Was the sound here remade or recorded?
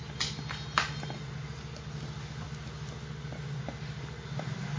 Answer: recorded